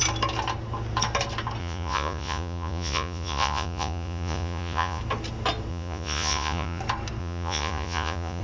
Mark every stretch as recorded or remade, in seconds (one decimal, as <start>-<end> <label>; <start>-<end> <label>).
0.0-1.6 recorded; 1.6-5.0 remade; 5.0-5.7 recorded; 5.7-6.8 remade; 6.8-7.2 recorded; 7.2-8.4 remade